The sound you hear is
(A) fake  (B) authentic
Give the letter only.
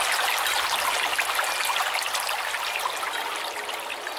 B